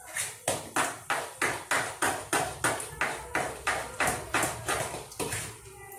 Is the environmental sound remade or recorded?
recorded